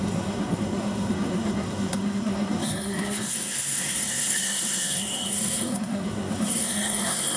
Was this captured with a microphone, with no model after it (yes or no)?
no